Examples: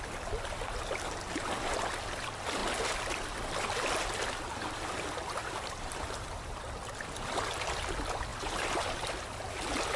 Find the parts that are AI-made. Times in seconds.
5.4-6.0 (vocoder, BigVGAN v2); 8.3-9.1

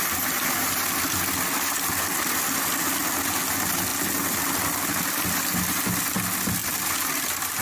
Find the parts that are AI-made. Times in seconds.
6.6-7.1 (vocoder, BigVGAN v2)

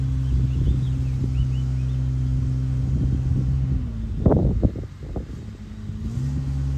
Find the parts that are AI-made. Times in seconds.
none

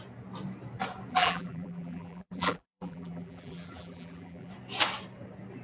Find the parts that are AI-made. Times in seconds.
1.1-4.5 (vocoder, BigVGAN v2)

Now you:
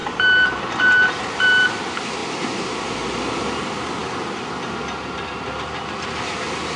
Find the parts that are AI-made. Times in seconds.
0.0-1.8 (vocoder, BigVGAN v2)

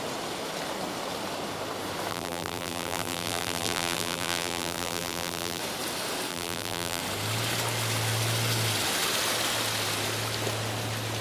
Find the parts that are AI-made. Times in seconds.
2.1-5.6 (vocoder, BigVGAN v2); 6.3-7.0

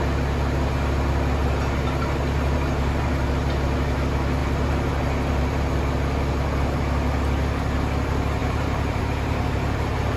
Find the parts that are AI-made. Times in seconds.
1.4-3.3 (vocoder, BigVGAN v2); 4.4-5.8; 8.4-9.0